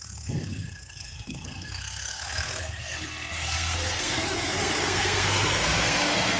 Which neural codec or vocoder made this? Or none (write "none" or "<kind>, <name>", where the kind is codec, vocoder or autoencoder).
codec, SNAC